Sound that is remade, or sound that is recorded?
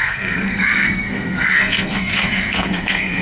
remade